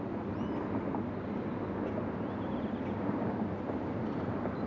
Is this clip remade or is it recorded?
recorded